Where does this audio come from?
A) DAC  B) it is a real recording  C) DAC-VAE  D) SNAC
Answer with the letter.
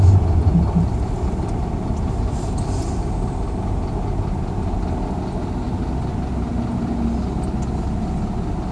B